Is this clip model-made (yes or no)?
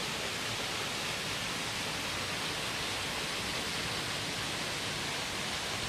no